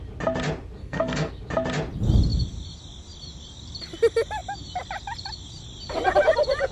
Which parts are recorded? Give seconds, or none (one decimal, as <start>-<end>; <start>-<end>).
0.0-0.8; 1.3-6.7